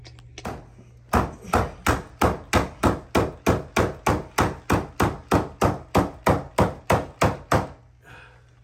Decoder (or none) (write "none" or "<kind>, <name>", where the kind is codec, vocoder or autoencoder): none